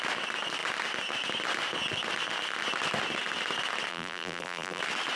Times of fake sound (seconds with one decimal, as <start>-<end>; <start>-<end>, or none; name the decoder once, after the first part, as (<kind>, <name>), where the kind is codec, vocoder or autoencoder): 3.9-4.8 (vocoder, BigVGAN v2)

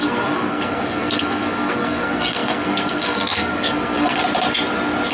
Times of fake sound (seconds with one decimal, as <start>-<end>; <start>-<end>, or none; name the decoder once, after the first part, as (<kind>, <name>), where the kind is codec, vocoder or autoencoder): 0.0-4.2 (codec, SNAC)

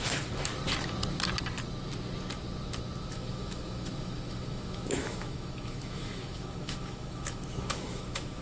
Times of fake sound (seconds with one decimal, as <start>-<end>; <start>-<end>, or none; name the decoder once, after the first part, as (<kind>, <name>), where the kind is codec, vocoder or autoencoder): 0.0-0.5 (autoencoder, DAC-VAE); 3.1-8.4

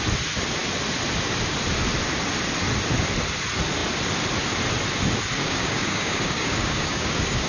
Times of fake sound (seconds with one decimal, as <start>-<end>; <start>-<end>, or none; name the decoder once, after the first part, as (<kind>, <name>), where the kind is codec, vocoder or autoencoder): 5.4-7.5 (codec, DAC)